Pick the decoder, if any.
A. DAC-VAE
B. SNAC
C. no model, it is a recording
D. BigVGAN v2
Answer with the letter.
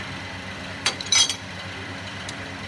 D